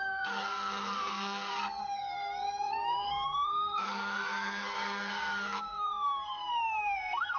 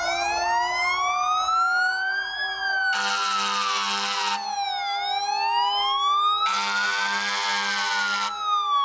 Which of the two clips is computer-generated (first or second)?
first